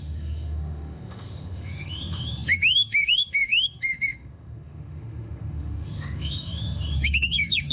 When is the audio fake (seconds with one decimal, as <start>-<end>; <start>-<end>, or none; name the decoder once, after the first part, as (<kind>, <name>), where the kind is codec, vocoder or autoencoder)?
0.0-7.7 (autoencoder, DAC-VAE)